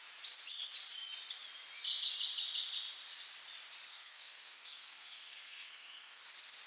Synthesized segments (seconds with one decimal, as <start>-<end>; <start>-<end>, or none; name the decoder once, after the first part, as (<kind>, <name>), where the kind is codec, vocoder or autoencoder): 3.9-6.2 (codec, SNAC)